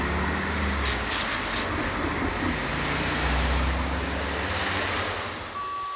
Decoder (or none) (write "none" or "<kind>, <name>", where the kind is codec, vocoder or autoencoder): none